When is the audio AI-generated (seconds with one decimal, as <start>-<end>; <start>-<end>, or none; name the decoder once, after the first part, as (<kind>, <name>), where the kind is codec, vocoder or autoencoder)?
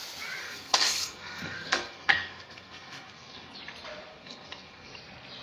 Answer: 0.4-3.6 (codec, SNAC); 4.1-4.9